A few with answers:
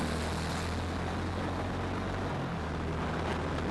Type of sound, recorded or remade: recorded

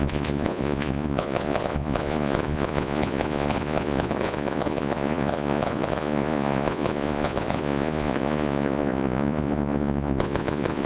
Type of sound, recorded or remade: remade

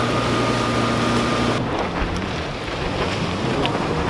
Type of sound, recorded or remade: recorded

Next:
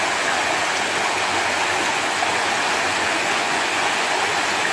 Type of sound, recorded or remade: remade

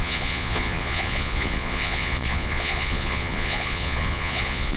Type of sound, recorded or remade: remade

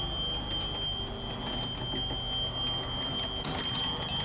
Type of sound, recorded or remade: recorded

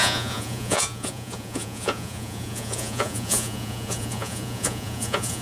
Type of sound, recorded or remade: remade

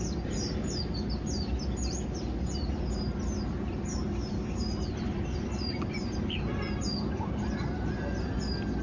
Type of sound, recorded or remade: recorded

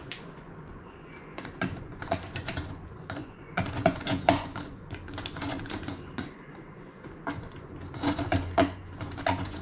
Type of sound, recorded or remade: remade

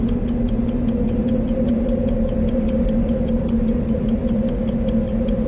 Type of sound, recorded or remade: recorded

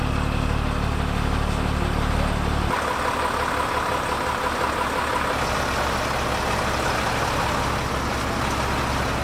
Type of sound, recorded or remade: recorded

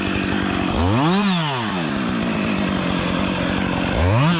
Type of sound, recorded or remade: recorded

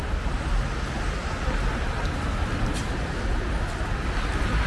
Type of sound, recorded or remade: recorded